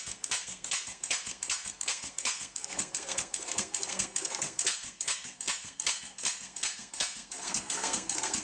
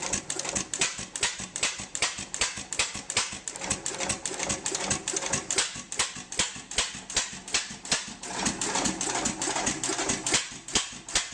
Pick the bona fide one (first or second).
second